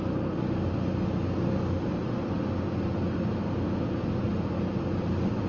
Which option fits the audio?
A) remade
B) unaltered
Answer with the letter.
B